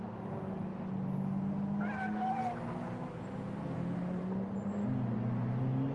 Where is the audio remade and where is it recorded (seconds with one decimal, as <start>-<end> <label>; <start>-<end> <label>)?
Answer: 0.0-5.9 recorded

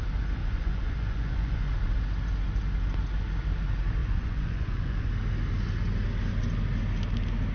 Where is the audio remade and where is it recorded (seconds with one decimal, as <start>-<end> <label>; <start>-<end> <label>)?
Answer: 0.0-0.4 recorded; 0.4-1.7 remade; 1.7-4.0 recorded; 4.0-5.1 remade; 5.1-7.5 recorded